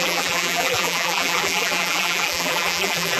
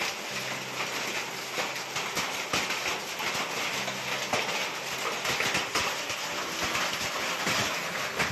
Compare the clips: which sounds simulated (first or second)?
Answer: first